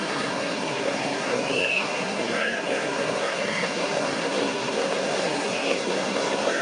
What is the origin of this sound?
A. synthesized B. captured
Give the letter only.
A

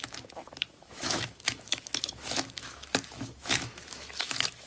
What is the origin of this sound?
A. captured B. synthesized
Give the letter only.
B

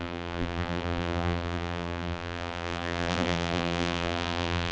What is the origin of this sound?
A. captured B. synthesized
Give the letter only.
B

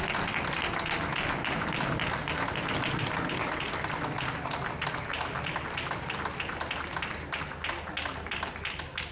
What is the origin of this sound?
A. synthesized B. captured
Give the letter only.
B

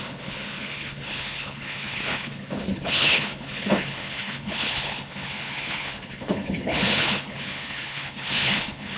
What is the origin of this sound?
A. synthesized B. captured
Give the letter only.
A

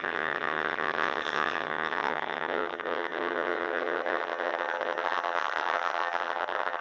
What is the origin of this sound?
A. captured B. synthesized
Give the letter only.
B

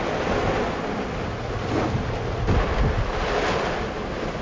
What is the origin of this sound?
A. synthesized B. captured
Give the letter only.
B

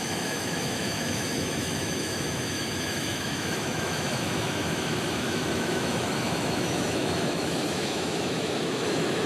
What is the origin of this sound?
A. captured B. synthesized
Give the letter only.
B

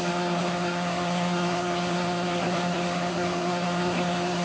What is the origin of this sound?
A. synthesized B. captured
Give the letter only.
A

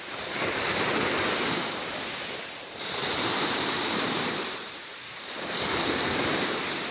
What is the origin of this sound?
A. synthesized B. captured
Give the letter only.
A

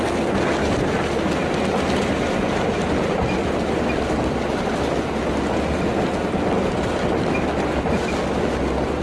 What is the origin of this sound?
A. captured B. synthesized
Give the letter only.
A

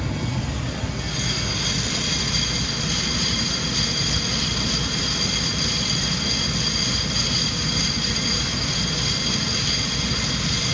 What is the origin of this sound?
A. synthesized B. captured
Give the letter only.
B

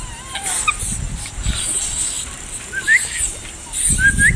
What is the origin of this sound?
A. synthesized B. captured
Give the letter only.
B